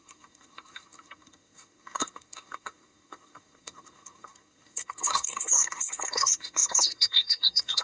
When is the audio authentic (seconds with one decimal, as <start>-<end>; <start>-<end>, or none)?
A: none